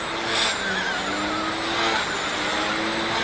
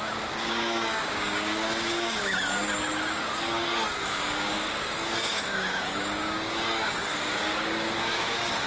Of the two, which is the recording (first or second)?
first